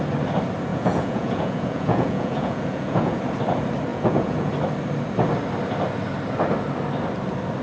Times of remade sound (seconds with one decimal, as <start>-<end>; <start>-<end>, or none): 0.7-3.2; 3.9-4.5